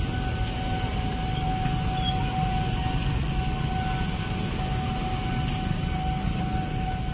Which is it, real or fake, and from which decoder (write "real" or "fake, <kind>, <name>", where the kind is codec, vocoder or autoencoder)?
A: real